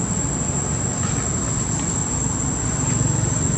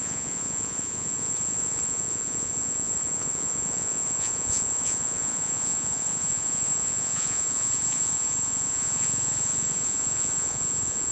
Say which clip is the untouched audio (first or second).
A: first